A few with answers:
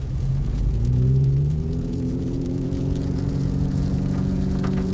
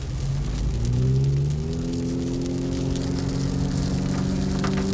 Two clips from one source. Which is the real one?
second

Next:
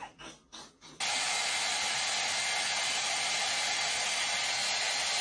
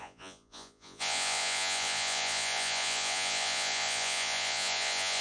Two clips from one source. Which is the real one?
first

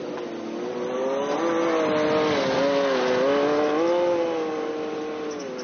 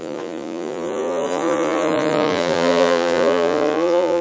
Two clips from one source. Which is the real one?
first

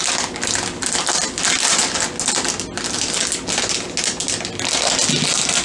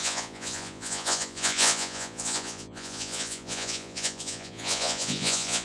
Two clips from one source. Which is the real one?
first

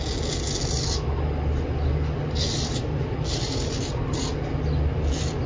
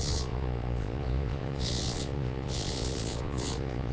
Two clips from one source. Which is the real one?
first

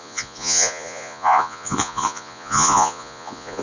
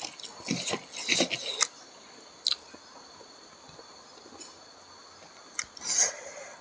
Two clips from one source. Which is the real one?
second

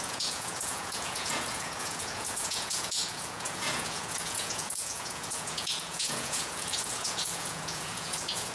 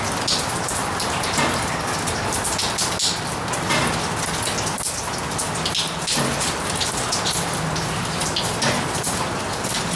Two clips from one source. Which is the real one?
second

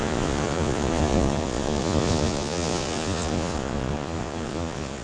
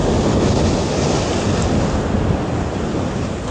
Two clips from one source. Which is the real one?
second